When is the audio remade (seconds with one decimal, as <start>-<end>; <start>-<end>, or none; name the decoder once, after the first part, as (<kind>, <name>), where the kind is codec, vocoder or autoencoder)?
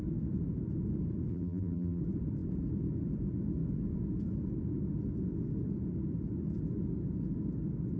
1.3-2.0 (vocoder, BigVGAN v2)